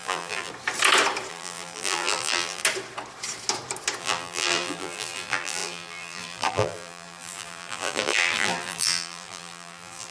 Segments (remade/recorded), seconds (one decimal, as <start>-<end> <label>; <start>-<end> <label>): 0.0-0.5 remade; 0.5-1.3 recorded; 1.3-2.6 remade; 2.6-4.0 recorded; 4.0-10.1 remade